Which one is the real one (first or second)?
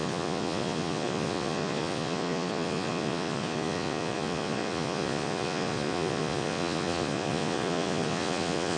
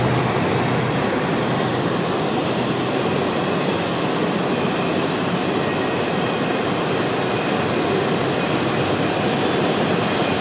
second